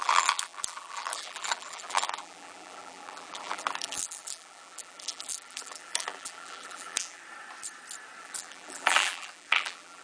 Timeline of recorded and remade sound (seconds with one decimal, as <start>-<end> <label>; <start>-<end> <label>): 0.0-7.2 remade; 7.2-8.2 recorded; 8.2-10.0 remade